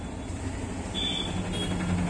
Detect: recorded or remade recorded